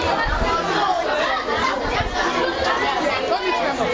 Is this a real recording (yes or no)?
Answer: yes